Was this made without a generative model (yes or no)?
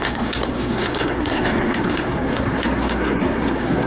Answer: no